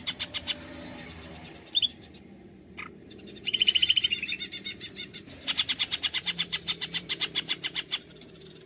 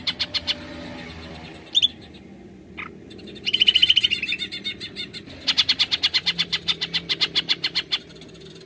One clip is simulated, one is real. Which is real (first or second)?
second